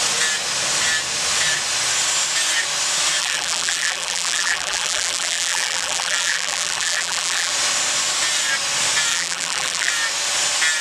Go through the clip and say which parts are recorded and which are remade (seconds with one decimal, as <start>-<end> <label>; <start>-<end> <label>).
0.0-3.2 recorded; 3.2-7.5 remade; 7.5-9.1 recorded; 9.1-9.9 remade; 9.9-10.8 recorded